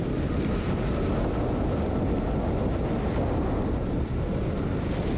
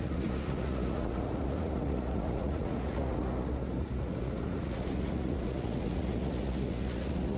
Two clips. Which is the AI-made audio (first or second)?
second